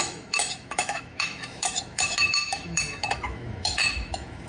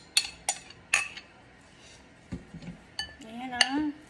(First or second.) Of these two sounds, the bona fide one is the second